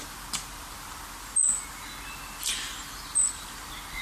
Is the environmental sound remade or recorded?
recorded